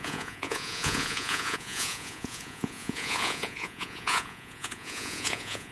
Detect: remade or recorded remade